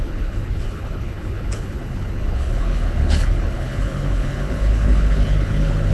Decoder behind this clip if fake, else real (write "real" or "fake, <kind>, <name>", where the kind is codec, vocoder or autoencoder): fake, codec, HILCodec